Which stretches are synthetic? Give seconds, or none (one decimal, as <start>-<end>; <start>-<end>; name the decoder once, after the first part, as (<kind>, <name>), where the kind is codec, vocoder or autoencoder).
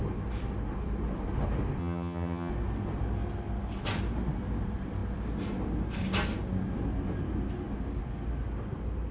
1.8-2.5 (vocoder, HiFi-GAN)